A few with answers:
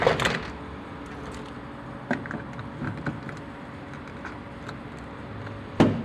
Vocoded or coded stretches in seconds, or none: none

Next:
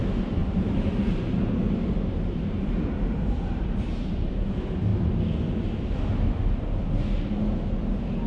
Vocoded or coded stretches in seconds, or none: 0.0-4.9 (vocoder, BigVGAN v2)

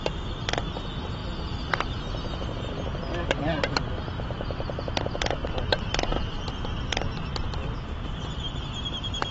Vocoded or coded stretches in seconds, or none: 5.4-8.2 (vocoder, BigVGAN v2)

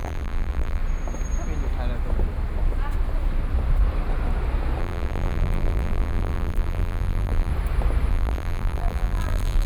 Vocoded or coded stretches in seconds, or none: 0.0-0.8 (vocoder, BigVGAN v2); 4.8-7.5; 8.1-9.7